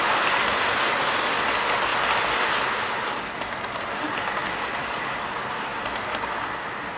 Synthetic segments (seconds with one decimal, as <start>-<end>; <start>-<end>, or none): none

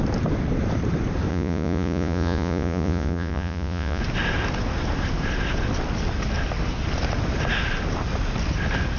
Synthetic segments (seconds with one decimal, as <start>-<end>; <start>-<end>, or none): 1.3-4.0

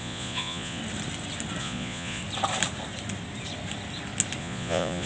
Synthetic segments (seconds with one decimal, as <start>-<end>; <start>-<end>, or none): 0.0-0.8; 1.6-2.2; 4.4-5.1

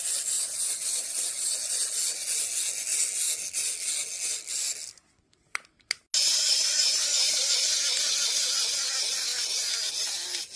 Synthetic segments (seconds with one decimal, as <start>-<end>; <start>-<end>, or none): none

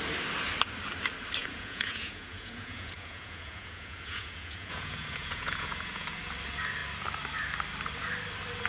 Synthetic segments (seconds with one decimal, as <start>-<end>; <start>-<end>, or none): 1.4-6.2

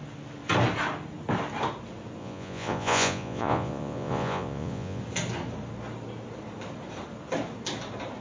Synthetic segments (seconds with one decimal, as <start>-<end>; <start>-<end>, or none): 2.2-5.0